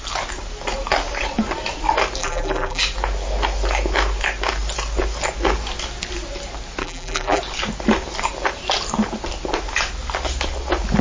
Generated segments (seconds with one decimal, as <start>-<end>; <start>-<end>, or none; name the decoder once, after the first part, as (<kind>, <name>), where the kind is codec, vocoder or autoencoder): 2.2-2.8 (vocoder, BigVGAN v2); 6.8-7.4